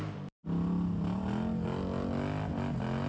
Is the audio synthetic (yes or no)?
no